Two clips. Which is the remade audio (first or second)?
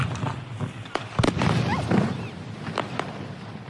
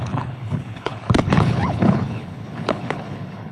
second